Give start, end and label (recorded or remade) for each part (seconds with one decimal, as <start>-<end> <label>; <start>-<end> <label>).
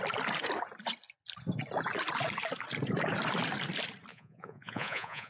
0.0-4.1 recorded; 4.1-5.3 remade